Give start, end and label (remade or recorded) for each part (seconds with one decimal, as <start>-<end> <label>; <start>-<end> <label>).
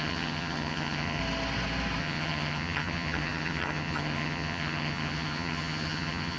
0.0-1.2 remade; 1.2-2.0 recorded; 2.0-6.4 remade